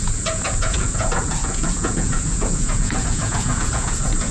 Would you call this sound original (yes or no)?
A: no